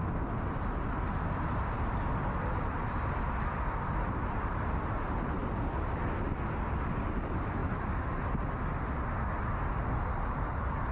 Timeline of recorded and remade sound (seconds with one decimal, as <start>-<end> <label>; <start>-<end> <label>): 0.0-10.9 recorded

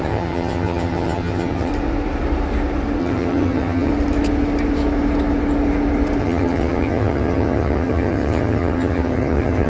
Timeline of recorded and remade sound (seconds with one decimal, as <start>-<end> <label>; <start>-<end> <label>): 0.0-1.7 remade; 1.7-3.0 recorded; 3.0-3.9 remade; 3.9-6.2 recorded; 6.2-9.7 remade

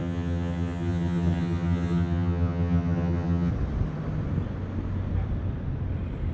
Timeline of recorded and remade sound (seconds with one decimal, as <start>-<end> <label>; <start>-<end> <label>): 0.0-3.5 remade; 3.5-6.3 recorded

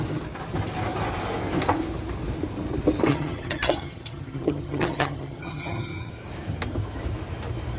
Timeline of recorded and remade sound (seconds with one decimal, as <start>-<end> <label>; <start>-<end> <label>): 0.0-3.1 recorded; 3.1-6.1 remade; 6.1-7.8 recorded

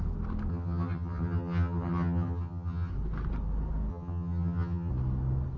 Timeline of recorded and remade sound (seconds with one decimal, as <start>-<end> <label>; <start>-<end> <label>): 0.0-0.5 recorded; 0.5-2.9 remade; 2.9-3.9 recorded; 3.9-4.9 remade; 4.9-5.6 recorded

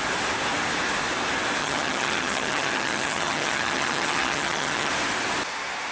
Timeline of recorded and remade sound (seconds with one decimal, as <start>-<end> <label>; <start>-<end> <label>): 0.0-1.6 recorded; 1.6-4.9 remade; 4.9-5.9 recorded

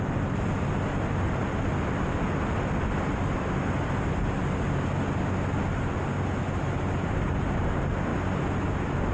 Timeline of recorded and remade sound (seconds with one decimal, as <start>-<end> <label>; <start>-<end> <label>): 0.0-9.1 recorded